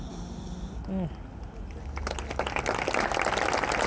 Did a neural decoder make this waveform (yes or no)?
no